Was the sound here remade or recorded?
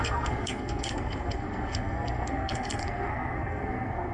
remade